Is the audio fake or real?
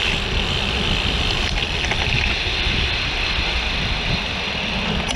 real